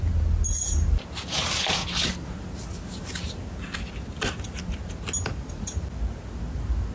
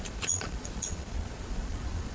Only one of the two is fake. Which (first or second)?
second